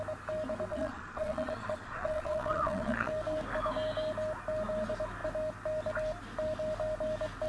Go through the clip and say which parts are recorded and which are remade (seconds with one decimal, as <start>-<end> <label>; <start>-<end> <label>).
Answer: 0.0-0.7 recorded; 0.7-3.1 remade; 3.1-7.5 recorded